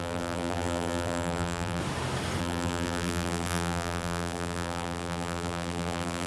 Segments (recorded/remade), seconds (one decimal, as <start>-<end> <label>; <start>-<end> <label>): 0.0-1.8 remade; 1.8-2.4 recorded; 2.4-6.3 remade